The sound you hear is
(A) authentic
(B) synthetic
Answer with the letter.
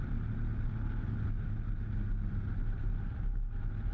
A